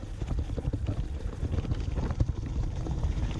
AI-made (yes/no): no